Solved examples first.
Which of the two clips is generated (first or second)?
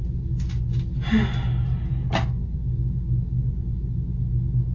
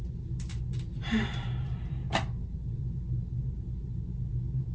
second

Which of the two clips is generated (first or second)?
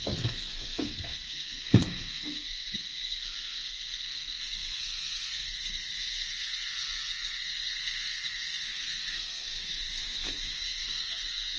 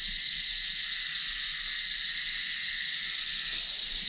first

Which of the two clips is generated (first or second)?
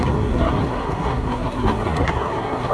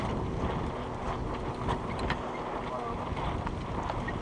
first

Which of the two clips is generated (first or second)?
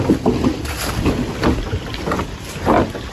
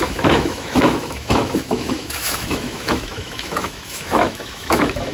second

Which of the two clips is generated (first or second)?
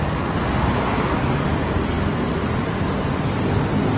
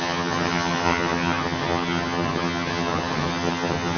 second